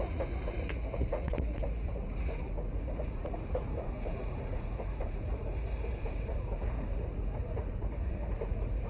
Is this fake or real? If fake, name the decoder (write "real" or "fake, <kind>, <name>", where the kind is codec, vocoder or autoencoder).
fake, vocoder, Vocos